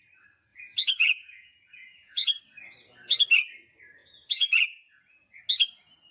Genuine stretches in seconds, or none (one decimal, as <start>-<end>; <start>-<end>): 0.0-0.5; 2.4-4.0; 5.4-6.1

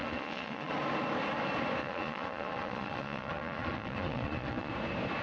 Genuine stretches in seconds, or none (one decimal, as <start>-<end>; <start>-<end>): 0.7-1.8; 4.7-5.2

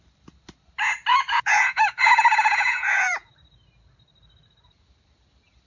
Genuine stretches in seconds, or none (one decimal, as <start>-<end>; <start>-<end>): 0.0-1.1; 3.3-5.7

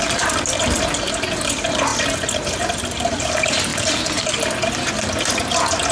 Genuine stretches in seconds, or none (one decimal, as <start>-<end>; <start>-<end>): 0.0-5.9

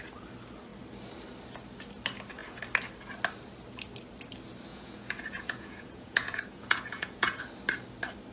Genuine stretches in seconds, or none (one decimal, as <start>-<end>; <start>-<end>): 0.0-4.7; 7.4-8.3